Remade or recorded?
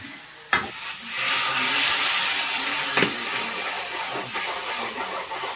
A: recorded